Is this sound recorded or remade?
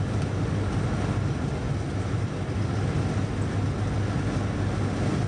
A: recorded